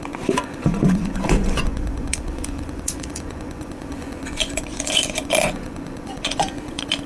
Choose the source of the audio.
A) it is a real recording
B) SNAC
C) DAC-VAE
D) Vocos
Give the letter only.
D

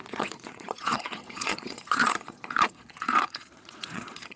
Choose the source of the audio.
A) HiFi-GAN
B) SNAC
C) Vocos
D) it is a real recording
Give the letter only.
C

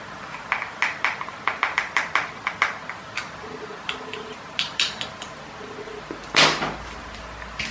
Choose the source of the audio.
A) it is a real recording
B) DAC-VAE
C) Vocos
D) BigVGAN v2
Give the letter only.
A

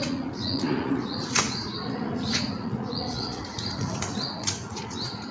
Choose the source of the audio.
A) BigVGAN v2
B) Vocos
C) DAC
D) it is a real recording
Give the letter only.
B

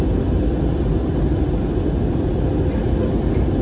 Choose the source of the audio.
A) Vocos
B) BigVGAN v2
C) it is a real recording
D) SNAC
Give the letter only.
C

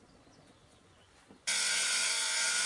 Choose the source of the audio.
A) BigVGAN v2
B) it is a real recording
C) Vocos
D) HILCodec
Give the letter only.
C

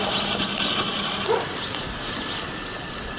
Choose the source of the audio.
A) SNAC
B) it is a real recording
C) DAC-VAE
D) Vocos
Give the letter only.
B